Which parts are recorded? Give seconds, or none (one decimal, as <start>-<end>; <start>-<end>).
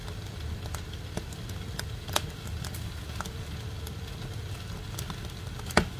0.0-6.0